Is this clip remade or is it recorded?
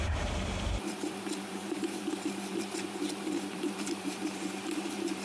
remade